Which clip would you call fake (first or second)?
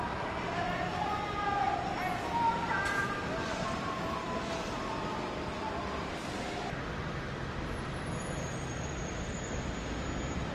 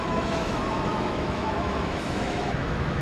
second